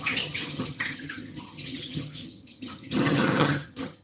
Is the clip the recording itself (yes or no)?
no